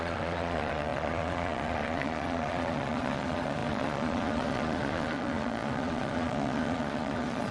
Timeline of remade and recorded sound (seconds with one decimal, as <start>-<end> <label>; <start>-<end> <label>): 0.0-7.5 remade